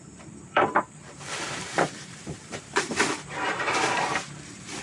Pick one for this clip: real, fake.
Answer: fake